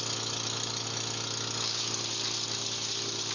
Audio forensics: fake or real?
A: real